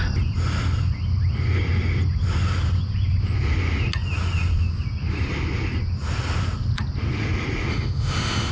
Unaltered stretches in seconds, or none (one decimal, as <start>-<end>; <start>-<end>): 0.0-7.7